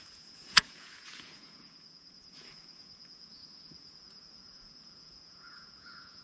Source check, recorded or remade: remade